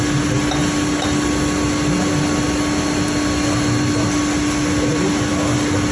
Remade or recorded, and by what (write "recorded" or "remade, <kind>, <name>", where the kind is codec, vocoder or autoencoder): recorded